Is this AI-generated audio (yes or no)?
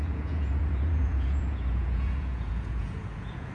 yes